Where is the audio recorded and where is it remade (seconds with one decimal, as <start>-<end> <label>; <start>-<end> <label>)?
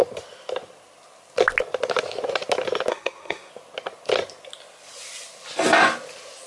0.0-2.9 recorded; 2.9-3.5 remade; 3.5-6.5 recorded